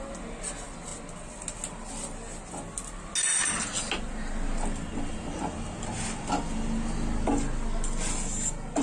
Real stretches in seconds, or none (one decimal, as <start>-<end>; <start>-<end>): 0.0-8.8